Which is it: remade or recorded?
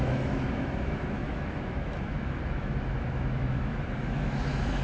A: remade